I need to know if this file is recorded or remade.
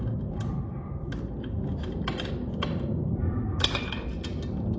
recorded